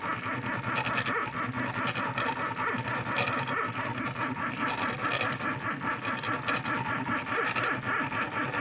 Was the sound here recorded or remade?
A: recorded